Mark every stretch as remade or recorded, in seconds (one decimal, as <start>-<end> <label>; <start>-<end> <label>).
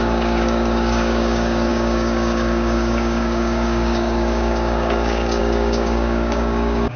0.0-7.0 remade